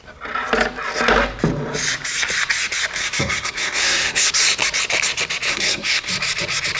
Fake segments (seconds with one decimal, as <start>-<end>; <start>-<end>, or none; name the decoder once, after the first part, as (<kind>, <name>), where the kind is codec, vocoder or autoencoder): 3.0-4.3 (codec, SNAC); 5.5-6.1